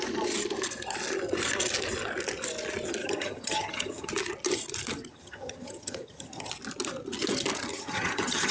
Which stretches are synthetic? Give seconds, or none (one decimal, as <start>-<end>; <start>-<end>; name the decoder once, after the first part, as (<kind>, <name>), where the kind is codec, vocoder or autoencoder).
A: 3.0-4.1 (vocoder, HiFi-GAN); 5.1-6.5; 7.7-8.5